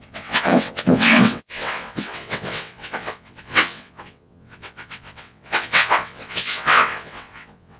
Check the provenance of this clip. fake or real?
fake